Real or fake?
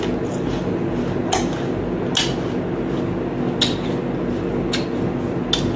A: real